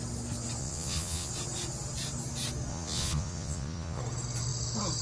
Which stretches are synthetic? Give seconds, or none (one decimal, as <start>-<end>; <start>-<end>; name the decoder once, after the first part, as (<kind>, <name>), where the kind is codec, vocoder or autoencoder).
0.6-1.3 (vocoder, Vocos); 2.7-4.0